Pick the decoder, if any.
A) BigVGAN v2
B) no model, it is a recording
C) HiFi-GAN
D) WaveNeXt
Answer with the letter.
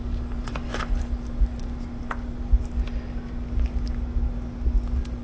B